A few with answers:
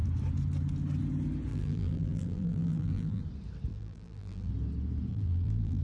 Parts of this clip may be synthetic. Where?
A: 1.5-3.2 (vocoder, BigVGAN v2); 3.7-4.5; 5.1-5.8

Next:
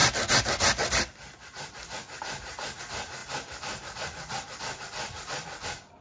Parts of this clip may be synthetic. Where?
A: none